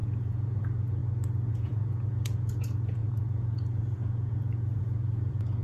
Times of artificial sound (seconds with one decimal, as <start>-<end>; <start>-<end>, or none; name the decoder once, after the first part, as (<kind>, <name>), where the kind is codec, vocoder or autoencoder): 0.0-1.0 (vocoder, Vocos); 1.5-5.6